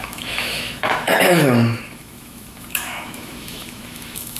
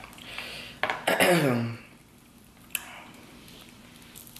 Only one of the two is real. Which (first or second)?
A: second